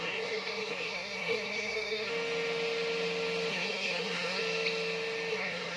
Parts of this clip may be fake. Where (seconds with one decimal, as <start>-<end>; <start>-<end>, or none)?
0.0-2.1; 3.5-4.4; 5.3-5.8